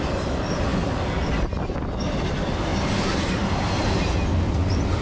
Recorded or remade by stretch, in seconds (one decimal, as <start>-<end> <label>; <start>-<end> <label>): 0.0-5.0 recorded